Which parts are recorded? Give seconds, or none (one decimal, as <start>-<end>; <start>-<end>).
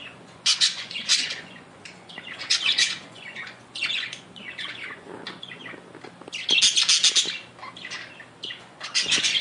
5.6-8.5